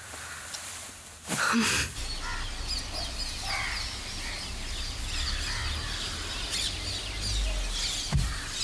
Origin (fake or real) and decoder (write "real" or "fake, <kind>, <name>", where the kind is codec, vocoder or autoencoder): real